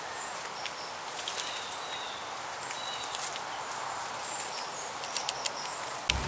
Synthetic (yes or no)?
no